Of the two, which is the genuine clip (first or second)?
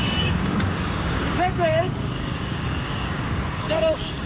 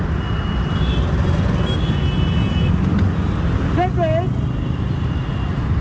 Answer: second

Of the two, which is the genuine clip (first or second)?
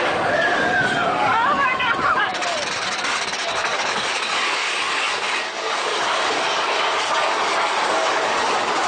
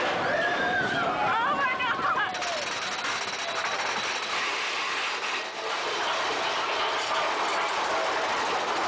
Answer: second